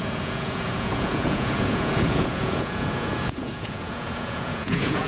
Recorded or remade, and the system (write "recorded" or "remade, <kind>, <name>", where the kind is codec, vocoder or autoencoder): remade, vocoder, Vocos